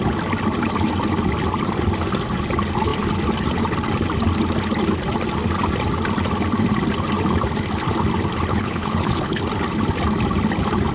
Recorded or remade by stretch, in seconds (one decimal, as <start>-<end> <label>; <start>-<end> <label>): 0.0-8.5 recorded; 8.5-9.4 remade; 9.4-10.9 recorded